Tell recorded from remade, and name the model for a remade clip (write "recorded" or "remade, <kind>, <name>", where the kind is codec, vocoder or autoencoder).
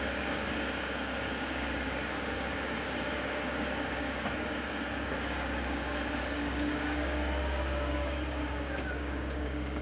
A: remade, codec, DAC